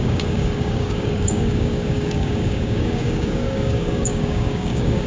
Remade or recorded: remade